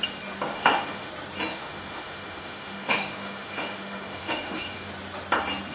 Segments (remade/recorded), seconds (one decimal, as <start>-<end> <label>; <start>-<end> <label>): 0.0-0.5 recorded; 0.5-1.1 remade; 1.1-1.5 recorded; 1.5-4.9 remade; 4.9-5.7 recorded